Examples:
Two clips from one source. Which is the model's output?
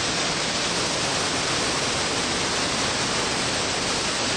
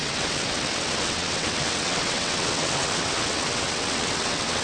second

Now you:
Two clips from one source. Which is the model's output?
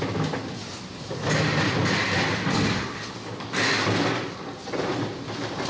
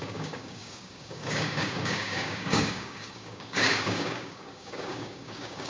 second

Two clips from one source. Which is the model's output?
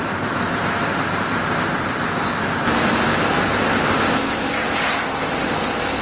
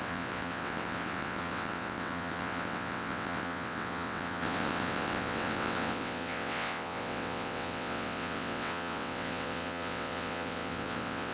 second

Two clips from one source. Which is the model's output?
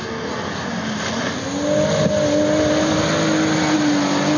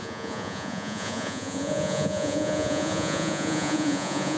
second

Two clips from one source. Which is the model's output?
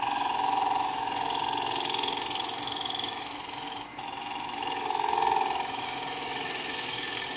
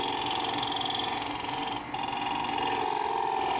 first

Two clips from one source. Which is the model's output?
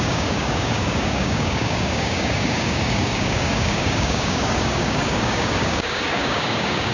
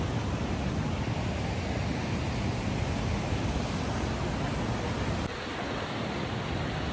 first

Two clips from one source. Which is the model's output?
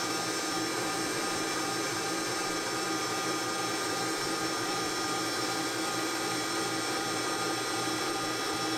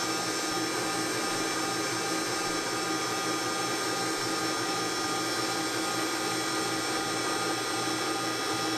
first